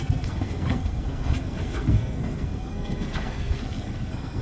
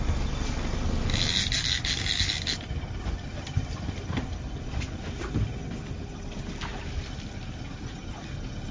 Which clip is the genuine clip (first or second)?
second